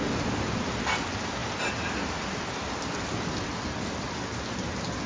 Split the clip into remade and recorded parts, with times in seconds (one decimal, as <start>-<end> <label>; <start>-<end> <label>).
0.0-5.1 recorded